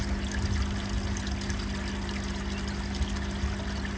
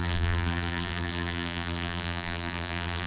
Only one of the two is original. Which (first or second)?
first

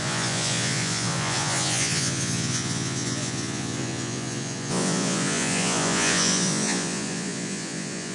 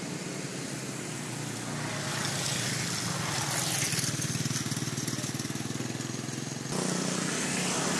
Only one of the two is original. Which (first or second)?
second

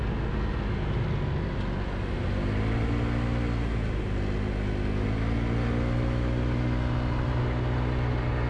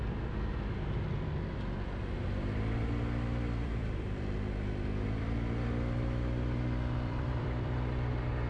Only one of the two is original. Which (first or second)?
first